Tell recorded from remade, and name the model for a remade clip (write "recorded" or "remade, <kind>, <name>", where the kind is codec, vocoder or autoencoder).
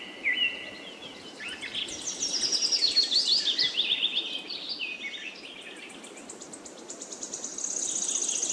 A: recorded